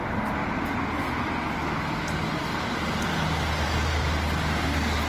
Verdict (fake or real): real